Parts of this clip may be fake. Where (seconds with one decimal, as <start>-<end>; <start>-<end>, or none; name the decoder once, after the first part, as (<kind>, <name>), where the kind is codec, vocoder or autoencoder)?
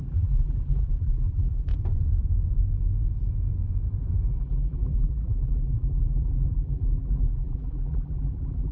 0.0-1.7 (vocoder, BigVGAN v2); 4.3-8.7